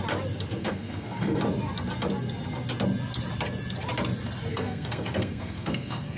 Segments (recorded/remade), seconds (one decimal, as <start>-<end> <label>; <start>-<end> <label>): 0.0-0.6 recorded; 0.6-1.4 remade; 1.4-4.5 recorded; 4.5-6.2 remade